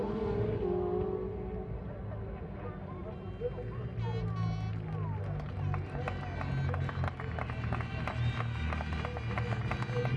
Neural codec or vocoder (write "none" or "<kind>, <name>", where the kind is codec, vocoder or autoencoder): none